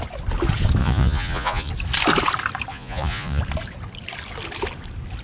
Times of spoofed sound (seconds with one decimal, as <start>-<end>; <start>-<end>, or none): 0.8-1.7; 2.7-3.4